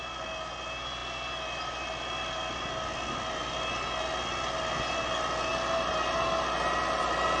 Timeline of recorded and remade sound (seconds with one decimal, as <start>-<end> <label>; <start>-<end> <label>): 0.0-7.4 recorded